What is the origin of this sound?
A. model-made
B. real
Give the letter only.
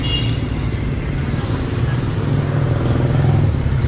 B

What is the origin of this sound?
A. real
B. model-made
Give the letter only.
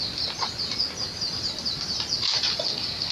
A